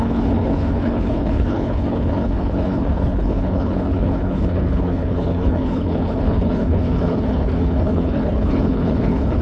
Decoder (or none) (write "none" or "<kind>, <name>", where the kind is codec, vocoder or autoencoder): codec, HILCodec